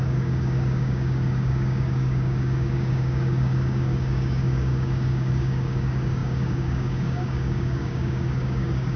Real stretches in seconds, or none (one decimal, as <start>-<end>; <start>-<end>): none